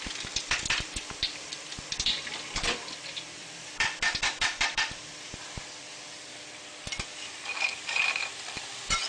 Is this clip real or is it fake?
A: fake